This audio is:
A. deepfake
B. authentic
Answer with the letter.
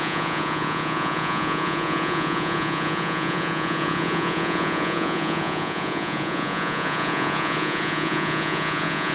A